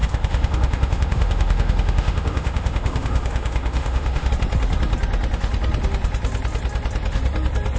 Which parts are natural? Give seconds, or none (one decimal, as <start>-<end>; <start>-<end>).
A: 4.3-7.8